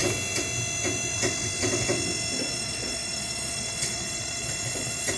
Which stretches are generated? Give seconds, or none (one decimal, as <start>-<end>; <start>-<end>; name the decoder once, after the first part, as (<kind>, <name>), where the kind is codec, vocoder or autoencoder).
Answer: 2.4-5.2 (vocoder, Vocos)